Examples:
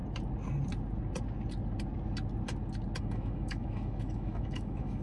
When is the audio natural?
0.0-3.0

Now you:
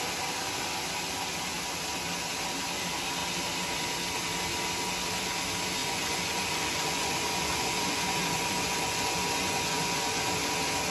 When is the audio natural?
0.0-5.8; 10.2-10.9

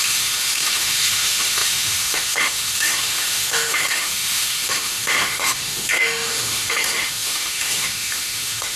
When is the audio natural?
none

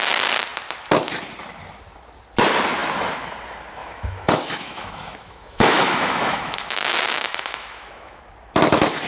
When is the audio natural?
0.0-3.8; 8.2-9.1

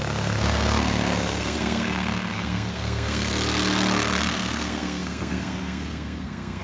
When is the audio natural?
3.3-4.3